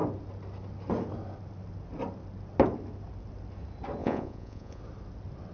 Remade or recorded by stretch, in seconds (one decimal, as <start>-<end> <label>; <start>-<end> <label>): 0.0-4.0 recorded; 4.0-4.8 remade; 4.8-5.5 recorded